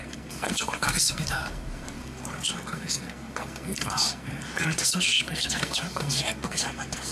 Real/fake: fake